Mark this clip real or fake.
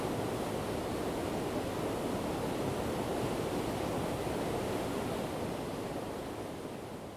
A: real